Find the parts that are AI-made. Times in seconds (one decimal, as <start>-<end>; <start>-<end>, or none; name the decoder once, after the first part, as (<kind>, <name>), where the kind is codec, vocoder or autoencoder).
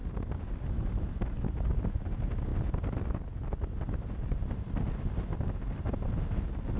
none